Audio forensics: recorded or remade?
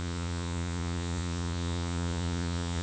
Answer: remade